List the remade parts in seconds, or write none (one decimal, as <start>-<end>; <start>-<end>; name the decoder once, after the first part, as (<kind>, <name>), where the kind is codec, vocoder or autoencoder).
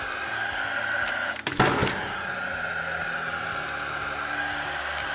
none